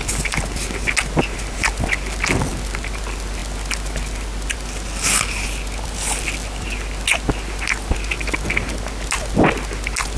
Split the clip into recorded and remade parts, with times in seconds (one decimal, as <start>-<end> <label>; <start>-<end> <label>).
0.0-10.2 recorded